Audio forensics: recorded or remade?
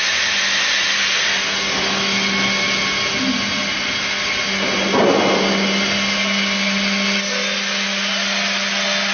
recorded